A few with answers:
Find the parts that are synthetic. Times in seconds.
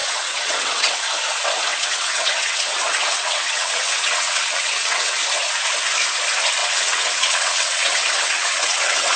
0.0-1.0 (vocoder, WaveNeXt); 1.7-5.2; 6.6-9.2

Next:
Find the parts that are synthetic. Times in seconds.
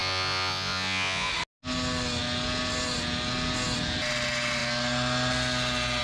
0.0-1.3 (vocoder, Vocos)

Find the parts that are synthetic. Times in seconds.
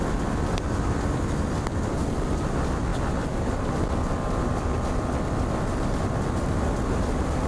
none